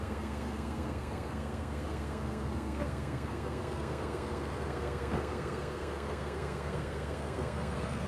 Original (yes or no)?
no